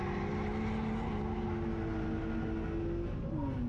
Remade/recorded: recorded